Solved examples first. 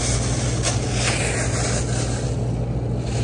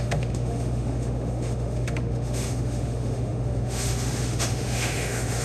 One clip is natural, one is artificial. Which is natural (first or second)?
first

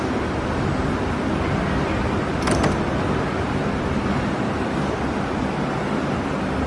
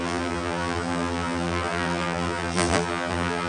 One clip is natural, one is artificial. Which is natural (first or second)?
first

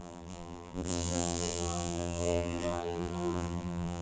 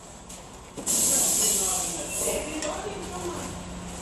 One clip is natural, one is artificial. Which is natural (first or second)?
second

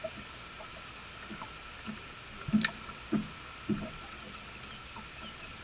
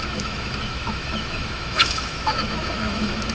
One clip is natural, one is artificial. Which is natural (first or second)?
first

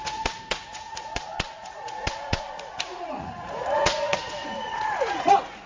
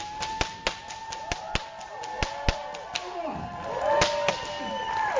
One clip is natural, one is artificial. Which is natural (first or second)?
second